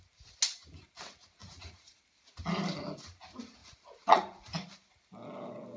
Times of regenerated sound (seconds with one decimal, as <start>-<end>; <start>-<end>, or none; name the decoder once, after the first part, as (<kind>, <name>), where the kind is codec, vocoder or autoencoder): 1.4-2.0 (vocoder, Vocos); 3.6-4.5